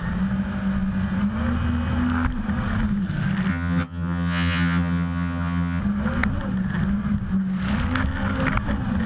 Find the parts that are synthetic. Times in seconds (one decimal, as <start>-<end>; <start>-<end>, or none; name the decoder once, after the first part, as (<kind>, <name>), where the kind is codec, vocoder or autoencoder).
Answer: 3.5-5.8 (vocoder, HiFi-GAN)